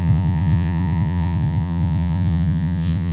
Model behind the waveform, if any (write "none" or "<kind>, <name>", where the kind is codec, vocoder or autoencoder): vocoder, Vocos